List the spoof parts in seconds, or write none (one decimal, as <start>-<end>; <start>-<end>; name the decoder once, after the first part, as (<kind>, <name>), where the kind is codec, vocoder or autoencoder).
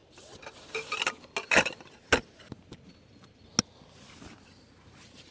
none